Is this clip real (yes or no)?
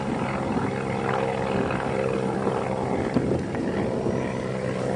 yes